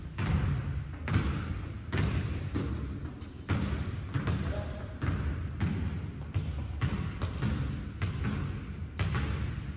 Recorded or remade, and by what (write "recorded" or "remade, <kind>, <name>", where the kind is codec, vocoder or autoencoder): recorded